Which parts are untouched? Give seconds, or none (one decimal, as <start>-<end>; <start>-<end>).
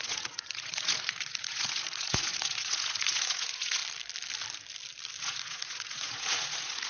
3.8-5.2